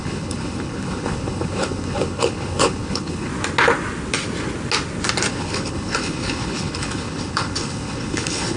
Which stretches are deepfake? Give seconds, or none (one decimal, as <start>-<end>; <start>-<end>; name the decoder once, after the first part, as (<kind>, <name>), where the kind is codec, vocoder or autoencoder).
0.0-3.3 (codec, HILCodec); 5.3-8.6